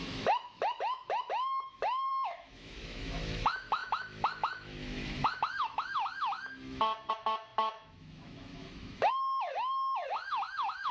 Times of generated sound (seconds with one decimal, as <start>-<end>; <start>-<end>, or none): 0.0-10.9